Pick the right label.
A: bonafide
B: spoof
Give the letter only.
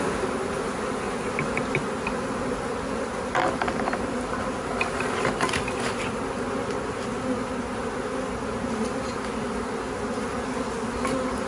A